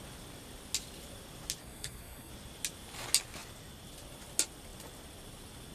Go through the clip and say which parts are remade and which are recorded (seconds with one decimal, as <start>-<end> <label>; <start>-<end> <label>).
0.0-1.6 recorded; 1.6-2.3 remade; 2.3-5.7 recorded